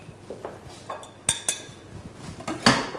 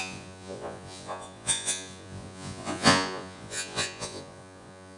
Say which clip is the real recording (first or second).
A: first